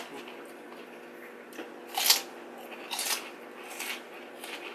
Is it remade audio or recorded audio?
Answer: recorded